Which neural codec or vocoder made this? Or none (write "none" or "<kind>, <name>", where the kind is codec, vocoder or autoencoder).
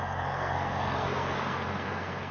codec, SNAC